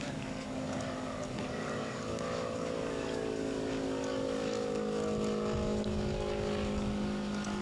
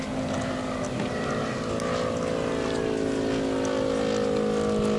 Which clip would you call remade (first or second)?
first